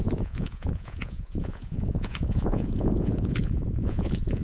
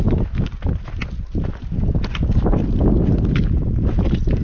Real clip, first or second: second